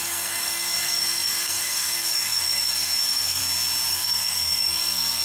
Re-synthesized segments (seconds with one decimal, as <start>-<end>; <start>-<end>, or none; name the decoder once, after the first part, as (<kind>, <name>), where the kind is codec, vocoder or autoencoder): 0.0-3.4 (codec, SNAC); 3.9-5.2